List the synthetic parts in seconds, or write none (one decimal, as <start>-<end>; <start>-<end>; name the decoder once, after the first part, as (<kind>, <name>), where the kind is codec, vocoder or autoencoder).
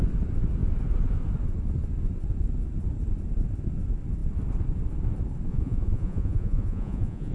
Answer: 5.5-7.3 (vocoder, Vocos)